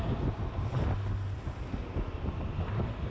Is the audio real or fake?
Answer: real